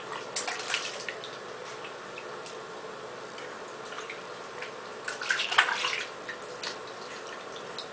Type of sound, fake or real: real